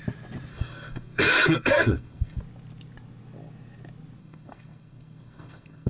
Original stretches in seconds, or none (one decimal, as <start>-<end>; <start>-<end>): 0.0-0.5; 2.4-4.2